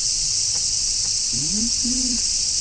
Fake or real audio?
fake